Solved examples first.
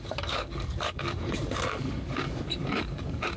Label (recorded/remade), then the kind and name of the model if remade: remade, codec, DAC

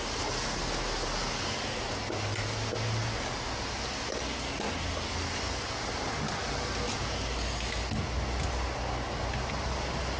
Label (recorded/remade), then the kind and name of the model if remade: recorded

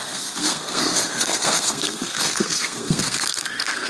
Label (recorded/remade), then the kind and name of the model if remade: remade, codec, SNAC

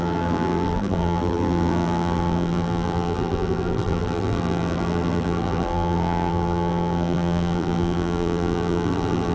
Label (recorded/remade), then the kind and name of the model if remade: remade, vocoder, BigVGAN v2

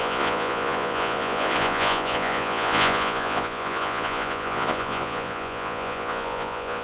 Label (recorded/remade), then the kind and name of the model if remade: remade, vocoder, Vocos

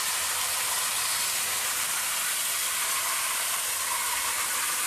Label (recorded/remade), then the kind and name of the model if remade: remade, vocoder, BigVGAN v2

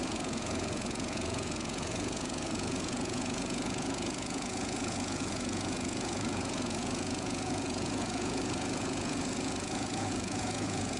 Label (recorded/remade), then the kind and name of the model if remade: remade, vocoder, Vocos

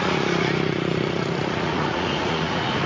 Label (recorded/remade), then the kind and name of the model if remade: remade, vocoder, Vocos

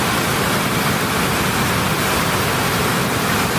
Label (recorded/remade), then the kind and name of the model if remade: recorded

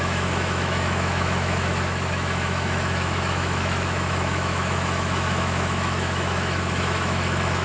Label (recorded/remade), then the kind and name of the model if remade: remade, autoencoder, DAC-VAE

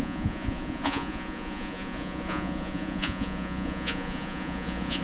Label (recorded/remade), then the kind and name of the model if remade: remade, vocoder, Vocos